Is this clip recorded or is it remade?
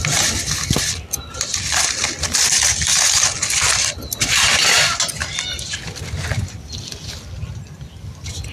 recorded